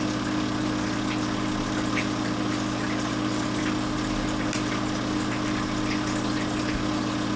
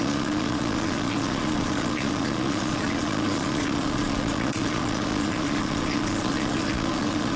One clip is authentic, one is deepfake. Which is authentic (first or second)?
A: first